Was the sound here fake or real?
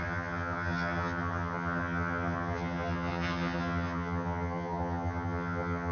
fake